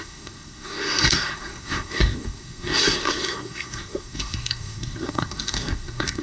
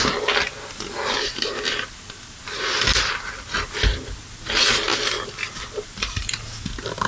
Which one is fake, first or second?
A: first